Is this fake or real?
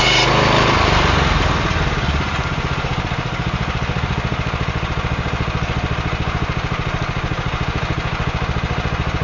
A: real